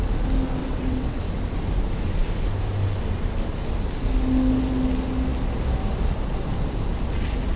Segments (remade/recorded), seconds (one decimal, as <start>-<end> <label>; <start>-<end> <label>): 0.0-0.6 recorded; 0.6-1.2 remade; 1.2-7.6 recorded